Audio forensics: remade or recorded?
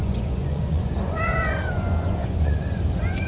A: remade